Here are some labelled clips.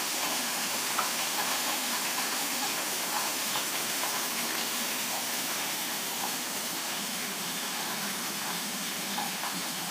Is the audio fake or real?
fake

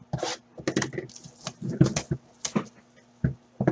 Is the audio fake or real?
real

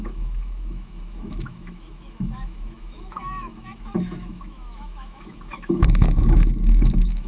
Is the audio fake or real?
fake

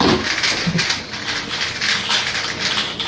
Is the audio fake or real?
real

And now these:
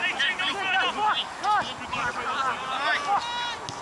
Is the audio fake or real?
real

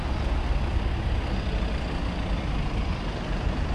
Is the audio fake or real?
real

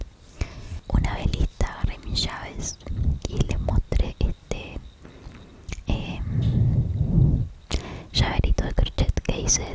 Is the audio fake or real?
real